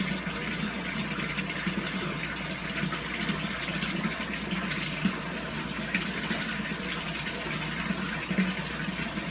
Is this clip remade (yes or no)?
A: no